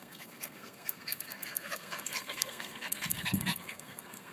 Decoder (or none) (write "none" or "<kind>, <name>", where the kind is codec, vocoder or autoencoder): codec, SNAC